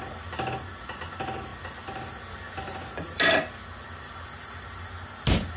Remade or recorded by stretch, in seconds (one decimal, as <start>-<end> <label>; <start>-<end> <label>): 0.0-5.6 recorded